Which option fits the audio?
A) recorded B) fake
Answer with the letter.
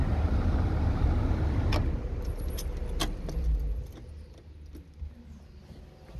A